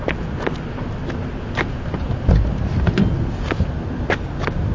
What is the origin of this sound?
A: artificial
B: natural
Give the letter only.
B